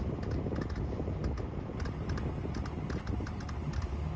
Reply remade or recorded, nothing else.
recorded